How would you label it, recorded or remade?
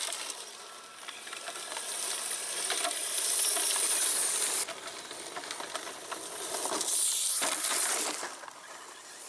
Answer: recorded